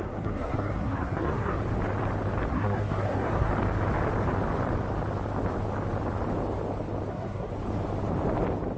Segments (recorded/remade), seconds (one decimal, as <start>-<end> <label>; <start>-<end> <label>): 0.0-1.6 remade; 1.6-2.5 recorded; 2.5-3.5 remade; 3.5-7.1 recorded; 7.1-7.5 remade; 7.5-8.8 recorded